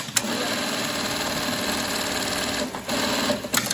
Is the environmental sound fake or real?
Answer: real